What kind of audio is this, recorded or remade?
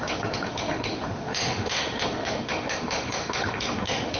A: remade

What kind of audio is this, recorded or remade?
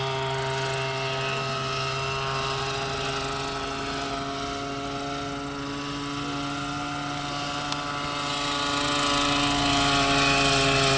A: recorded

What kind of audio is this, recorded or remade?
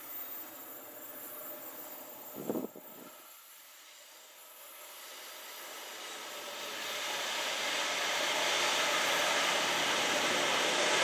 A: recorded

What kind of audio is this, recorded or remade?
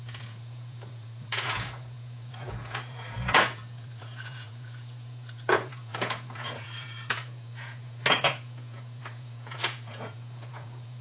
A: remade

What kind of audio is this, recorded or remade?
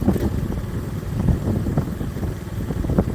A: recorded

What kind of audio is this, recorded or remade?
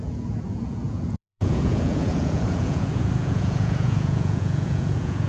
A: remade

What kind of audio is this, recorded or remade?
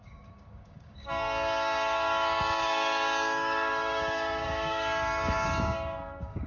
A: remade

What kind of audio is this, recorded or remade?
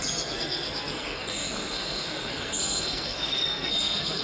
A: remade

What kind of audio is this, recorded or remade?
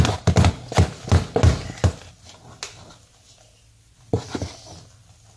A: recorded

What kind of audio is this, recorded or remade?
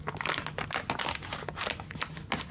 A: recorded